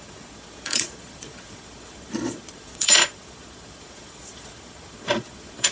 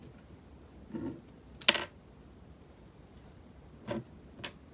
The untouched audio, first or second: second